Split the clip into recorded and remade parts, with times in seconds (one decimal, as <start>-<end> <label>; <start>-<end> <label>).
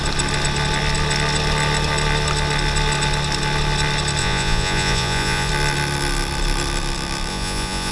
0.0-4.2 recorded; 4.2-5.5 remade; 5.5-7.3 recorded; 7.3-7.9 remade